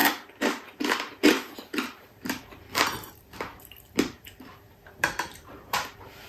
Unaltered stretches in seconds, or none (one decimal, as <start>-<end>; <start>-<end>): 0.0-0.5